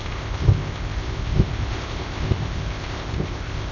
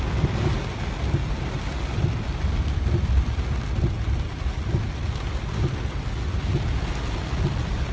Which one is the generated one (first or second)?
first